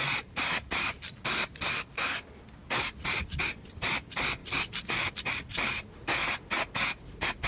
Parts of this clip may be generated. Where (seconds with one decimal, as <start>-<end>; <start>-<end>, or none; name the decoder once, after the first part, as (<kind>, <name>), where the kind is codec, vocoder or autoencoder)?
0.0-7.5 (vocoder, BigVGAN v2)